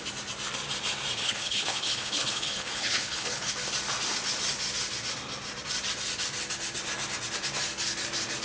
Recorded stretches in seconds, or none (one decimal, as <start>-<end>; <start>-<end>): 0.0-1.2; 3.5-8.4

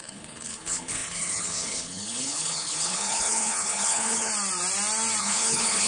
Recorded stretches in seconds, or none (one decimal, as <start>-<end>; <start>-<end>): 4.3-5.2

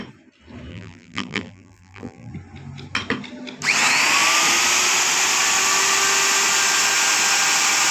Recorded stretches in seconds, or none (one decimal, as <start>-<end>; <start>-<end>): 0.0-0.7; 2.3-7.9

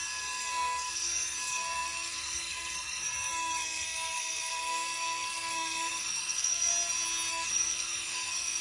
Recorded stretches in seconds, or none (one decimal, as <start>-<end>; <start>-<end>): 6.7-7.3

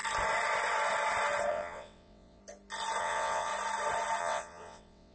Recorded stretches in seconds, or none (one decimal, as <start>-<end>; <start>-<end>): 0.0-1.5; 2.4-3.0; 3.5-4.2